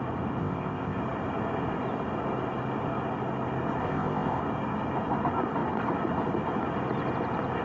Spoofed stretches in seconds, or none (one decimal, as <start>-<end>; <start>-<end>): 0.4-1.0; 3.8-4.4